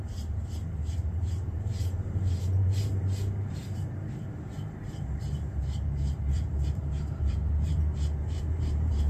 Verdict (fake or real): fake